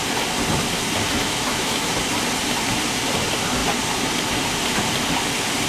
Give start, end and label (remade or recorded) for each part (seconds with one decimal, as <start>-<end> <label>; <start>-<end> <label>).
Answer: 0.0-1.2 recorded; 1.2-1.9 remade; 1.9-5.7 recorded